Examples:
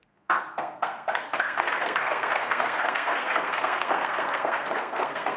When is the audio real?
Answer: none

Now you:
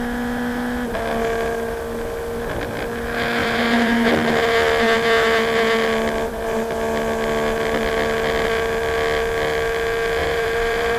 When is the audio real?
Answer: 0.0-3.4; 4.1-10.2

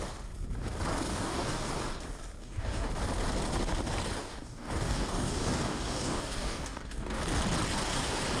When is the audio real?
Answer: 0.0-1.1; 1.7-2.4; 2.9-4.2; 7.2-8.4

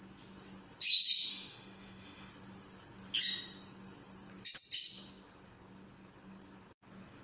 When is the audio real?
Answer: 0.0-1.3; 2.3-7.2

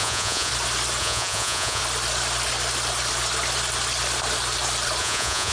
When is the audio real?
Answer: 0.5-1.0; 1.8-5.0